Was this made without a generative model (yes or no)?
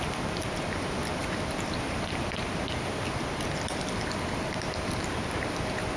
yes